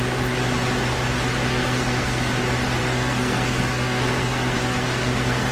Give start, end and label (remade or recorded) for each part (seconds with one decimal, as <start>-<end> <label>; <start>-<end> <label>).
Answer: 0.0-1.5 recorded; 1.5-2.3 remade; 2.3-2.8 recorded; 2.8-5.5 remade